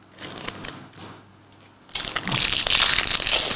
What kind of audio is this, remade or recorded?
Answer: recorded